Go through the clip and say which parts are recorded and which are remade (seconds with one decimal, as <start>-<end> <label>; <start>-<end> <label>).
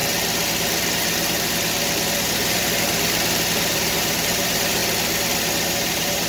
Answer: 0.0-2.1 recorded; 2.1-2.6 remade; 2.6-3.7 recorded; 3.7-4.8 remade; 4.8-5.7 recorded; 5.7-6.3 remade